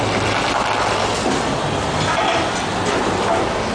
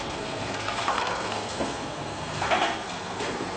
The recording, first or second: first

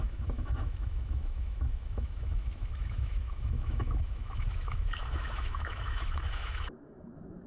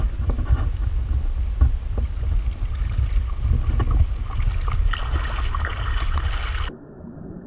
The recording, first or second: second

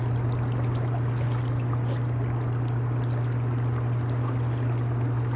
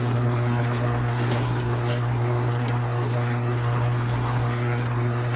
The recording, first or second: first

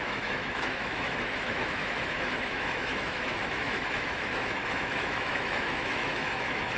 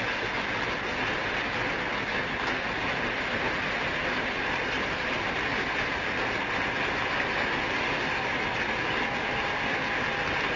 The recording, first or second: second